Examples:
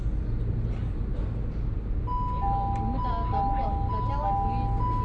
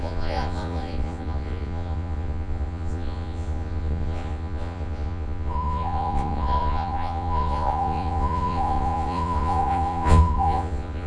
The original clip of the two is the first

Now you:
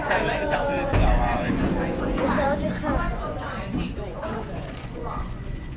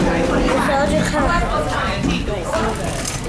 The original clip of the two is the second